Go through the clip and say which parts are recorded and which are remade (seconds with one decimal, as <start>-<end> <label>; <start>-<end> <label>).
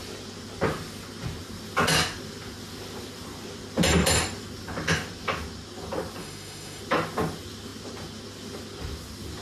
0.0-6.2 recorded; 6.2-6.8 remade; 6.8-9.4 recorded